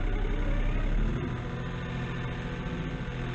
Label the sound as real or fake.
real